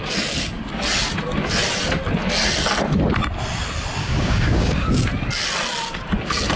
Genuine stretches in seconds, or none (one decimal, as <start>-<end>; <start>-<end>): 0.0-4.0; 4.9-6.6